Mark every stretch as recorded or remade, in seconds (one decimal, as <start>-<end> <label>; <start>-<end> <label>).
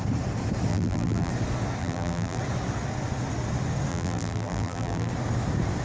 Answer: 0.0-0.7 recorded; 0.7-1.3 remade; 1.3-1.8 recorded; 1.8-2.4 remade; 2.4-3.9 recorded; 3.9-5.1 remade; 5.1-5.8 recorded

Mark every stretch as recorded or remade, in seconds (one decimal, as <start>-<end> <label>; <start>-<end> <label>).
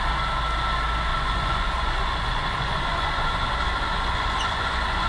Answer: 0.0-1.1 recorded; 1.1-3.5 remade; 3.5-3.9 recorded; 3.9-5.1 remade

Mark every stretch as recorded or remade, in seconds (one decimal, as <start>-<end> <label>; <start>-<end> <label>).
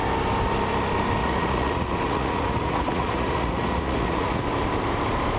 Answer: 0.0-1.2 recorded; 1.2-4.4 remade; 4.4-5.4 recorded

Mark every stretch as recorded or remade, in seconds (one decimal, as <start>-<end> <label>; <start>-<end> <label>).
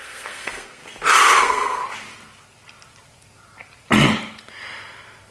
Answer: 0.0-0.8 remade; 0.8-1.4 recorded; 1.4-1.8 remade; 1.8-5.3 recorded